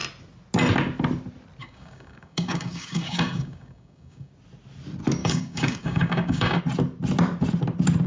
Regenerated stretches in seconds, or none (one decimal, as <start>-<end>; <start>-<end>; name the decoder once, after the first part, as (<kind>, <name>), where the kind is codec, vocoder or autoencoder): 1.6-4.3 (codec, DAC); 5.2-6.6